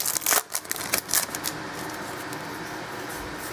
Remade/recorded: recorded